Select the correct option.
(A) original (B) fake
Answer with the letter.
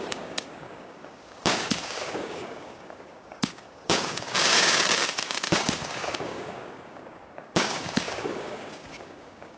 B